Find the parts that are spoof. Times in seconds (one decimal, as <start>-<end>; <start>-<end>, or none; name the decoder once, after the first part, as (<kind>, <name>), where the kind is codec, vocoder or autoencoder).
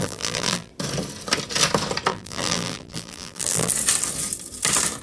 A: 0.0-0.7 (vocoder, BigVGAN v2); 2.1-3.7